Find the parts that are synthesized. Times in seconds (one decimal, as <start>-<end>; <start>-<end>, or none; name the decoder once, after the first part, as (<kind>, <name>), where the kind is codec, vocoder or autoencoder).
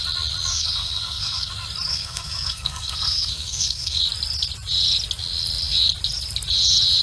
0.5-1.5 (codec, SNAC); 1.9-4.0